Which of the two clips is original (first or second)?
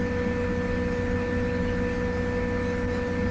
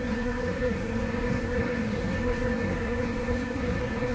first